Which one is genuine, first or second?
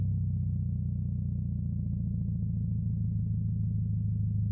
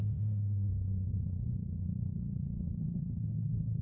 first